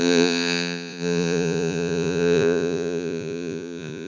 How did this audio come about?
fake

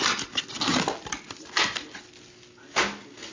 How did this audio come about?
real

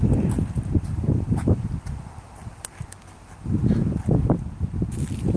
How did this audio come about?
fake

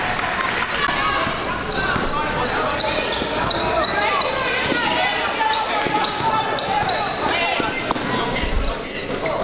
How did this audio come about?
real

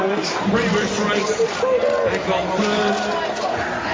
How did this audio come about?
real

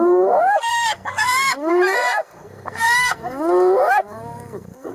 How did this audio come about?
fake